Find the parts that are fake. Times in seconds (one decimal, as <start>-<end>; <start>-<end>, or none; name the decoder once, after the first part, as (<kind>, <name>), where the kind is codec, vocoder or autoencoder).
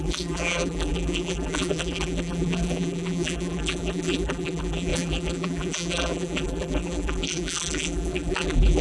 0.0-8.8 (vocoder, BigVGAN v2)